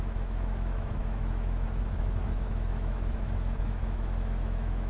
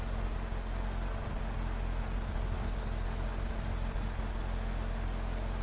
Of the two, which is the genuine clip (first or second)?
second